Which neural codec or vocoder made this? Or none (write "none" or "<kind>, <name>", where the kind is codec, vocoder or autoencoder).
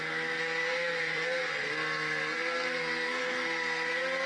codec, SNAC